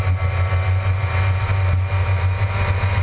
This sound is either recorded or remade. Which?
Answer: recorded